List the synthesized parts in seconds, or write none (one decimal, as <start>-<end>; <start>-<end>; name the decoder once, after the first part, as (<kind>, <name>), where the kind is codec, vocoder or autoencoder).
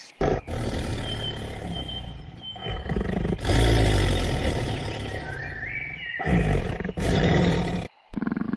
0.0-0.9 (vocoder, BigVGAN v2); 1.9-2.6; 6.6-8.6